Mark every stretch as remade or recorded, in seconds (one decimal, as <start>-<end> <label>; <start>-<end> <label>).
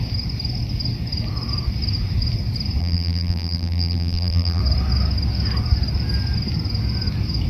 0.0-2.8 recorded; 2.8-4.6 remade; 4.6-7.5 recorded